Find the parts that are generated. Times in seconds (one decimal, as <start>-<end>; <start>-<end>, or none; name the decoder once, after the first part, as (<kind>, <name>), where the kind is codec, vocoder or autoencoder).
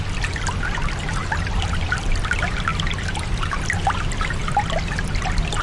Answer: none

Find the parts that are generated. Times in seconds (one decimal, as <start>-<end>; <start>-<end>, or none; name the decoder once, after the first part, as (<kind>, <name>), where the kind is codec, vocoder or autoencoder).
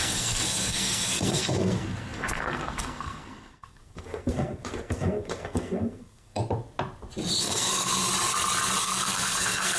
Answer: 0.0-6.4 (codec, SNAC); 7.4-7.9; 8.8-9.8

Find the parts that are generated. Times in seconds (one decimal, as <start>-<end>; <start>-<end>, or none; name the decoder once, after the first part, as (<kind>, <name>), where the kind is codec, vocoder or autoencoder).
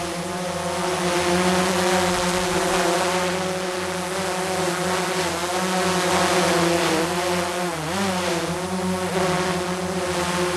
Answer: none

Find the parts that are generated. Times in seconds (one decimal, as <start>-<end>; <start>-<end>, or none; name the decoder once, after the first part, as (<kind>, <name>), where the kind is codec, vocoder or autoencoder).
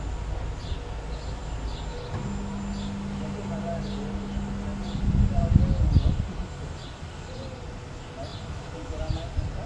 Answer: none